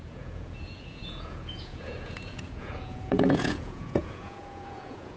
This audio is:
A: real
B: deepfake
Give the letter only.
B